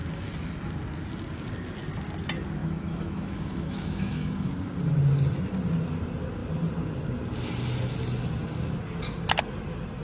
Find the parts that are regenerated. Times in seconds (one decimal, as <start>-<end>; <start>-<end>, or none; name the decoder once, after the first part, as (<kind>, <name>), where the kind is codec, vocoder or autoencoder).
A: 2.6-4.5 (autoencoder, DAC-VAE)